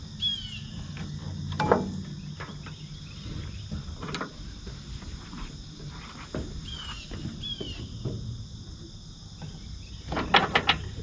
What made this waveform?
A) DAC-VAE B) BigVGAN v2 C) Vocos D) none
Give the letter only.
D